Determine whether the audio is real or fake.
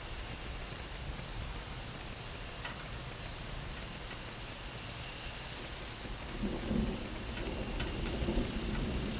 real